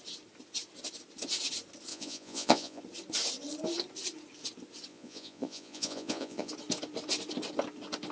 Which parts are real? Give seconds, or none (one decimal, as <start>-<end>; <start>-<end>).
0.0-1.9; 2.8-4.9; 6.5-8.1